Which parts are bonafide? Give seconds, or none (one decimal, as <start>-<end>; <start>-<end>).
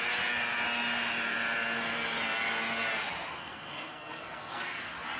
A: 0.0-3.4; 4.8-5.2